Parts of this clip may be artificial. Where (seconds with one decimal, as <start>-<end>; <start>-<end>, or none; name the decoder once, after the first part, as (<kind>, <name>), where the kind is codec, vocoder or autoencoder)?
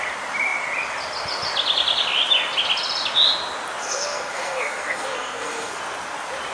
3.8-5.8 (codec, SNAC)